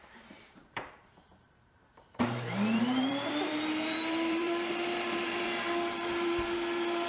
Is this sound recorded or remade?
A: remade